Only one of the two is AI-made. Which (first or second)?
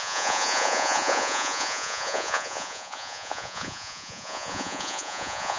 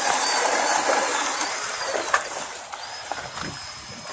first